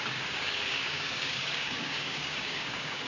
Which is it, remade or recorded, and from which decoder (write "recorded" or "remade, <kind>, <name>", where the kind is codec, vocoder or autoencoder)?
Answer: remade, codec, DAC